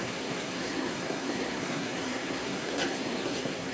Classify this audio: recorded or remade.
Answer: remade